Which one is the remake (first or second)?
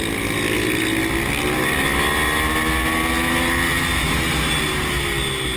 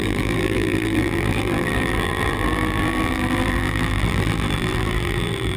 second